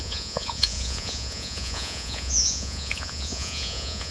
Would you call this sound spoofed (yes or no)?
yes